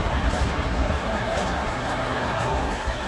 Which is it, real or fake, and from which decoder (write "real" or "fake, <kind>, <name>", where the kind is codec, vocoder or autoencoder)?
fake, codec, SNAC